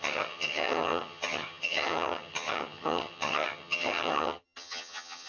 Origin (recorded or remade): remade